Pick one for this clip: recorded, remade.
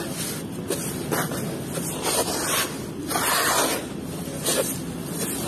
recorded